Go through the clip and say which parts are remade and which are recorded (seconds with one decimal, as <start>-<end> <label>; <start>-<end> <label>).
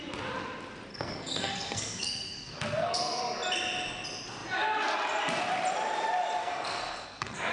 0.0-0.9 recorded; 0.9-3.2 remade; 3.2-6.4 recorded; 6.4-7.5 remade